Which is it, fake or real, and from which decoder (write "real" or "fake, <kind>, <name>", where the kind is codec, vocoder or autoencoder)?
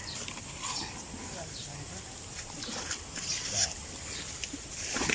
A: fake, vocoder, BigVGAN v2